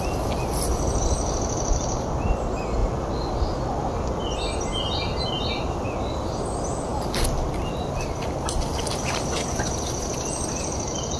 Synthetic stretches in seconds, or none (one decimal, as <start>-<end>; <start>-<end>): none